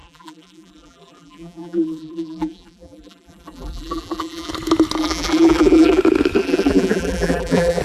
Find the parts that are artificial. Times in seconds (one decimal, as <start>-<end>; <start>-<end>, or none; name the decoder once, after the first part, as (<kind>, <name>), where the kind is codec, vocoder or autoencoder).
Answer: 0.0-4.5 (vocoder, BigVGAN v2); 5.0-6.0; 6.4-7.8